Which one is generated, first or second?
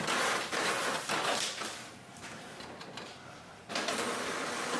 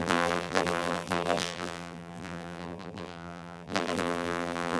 second